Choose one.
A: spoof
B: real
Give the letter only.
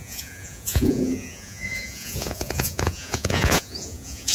A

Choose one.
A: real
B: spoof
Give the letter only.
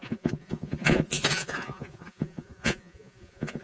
B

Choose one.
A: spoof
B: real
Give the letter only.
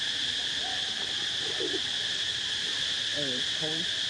B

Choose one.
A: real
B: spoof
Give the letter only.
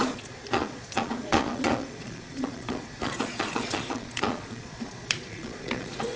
B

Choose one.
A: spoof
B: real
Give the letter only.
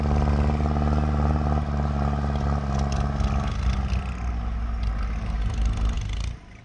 B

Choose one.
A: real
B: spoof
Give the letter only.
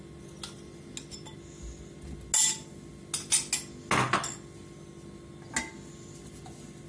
A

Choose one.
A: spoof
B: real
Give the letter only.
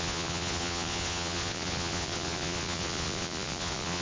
A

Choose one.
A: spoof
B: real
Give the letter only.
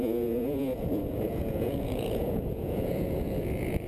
A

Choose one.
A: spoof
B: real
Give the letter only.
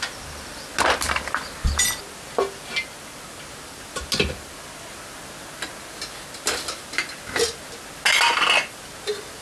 B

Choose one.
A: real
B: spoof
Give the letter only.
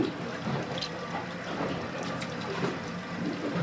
A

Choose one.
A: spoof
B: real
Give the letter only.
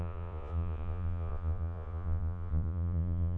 A